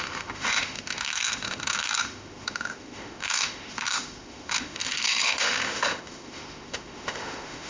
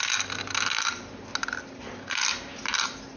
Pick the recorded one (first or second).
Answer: second